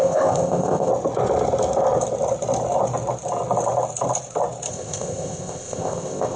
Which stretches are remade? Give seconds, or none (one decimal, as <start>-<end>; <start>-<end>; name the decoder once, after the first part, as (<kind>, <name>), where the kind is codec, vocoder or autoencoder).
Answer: 0.0-0.9 (codec, ZipCodec); 4.7-6.4